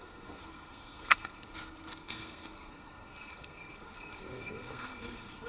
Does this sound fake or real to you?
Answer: fake